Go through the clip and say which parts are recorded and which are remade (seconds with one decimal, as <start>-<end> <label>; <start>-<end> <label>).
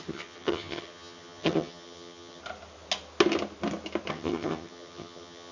0.0-2.4 remade; 2.4-4.1 recorded; 4.1-5.5 remade